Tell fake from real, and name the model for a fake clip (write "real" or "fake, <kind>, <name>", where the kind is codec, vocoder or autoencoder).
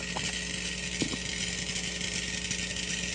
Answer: real